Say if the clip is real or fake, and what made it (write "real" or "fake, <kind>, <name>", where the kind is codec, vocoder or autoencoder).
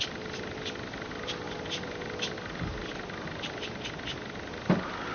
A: real